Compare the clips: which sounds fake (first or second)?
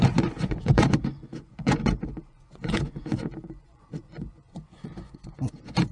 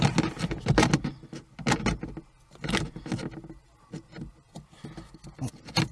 first